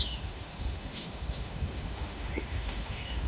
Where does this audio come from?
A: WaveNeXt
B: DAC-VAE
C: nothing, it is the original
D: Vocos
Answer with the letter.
B